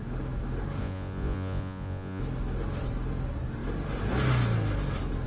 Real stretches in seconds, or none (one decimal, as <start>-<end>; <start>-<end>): 0.0-0.8; 2.2-5.3